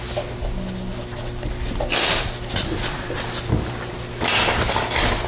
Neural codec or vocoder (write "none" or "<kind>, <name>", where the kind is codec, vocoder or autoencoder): none